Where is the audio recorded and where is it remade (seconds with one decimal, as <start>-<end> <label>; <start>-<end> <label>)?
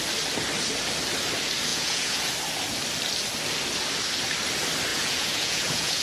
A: 0.0-1.7 recorded; 1.7-2.3 remade; 2.3-4.9 recorded; 4.9-6.0 remade